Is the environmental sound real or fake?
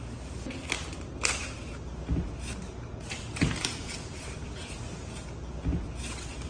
real